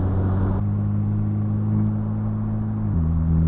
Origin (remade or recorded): recorded